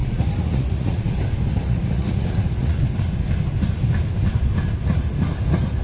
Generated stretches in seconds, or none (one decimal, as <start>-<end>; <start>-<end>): 0.0-1.1; 1.5-2.8

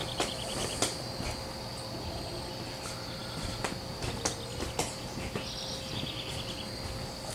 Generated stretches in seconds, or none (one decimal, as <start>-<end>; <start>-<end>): none

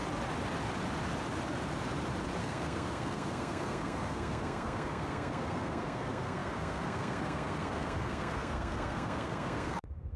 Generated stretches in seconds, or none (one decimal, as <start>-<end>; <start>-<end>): 2.4-10.2

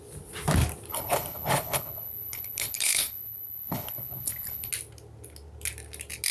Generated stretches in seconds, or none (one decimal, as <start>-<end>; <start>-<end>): 0.9-4.7

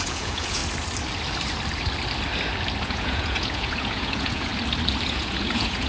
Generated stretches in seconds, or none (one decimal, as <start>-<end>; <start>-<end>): 0.0-0.6; 2.8-4.5; 5.1-5.9

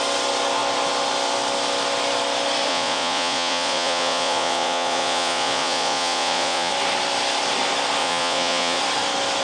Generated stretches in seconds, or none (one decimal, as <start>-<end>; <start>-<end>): 2.7-6.7; 8.0-8.8

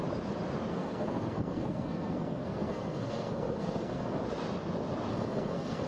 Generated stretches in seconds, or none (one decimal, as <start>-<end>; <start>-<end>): 0.7-4.2; 5.1-5.9

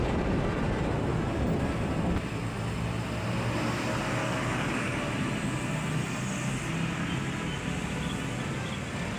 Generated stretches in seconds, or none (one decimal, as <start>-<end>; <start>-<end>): 4.2-5.0